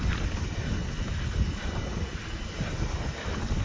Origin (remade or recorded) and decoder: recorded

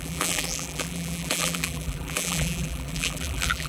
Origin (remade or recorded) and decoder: remade, vocoder, BigVGAN v2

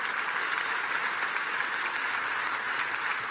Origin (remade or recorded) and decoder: recorded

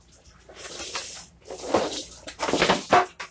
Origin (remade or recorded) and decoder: recorded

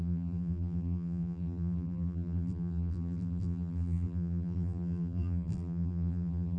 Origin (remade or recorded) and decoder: remade, vocoder, BigVGAN v2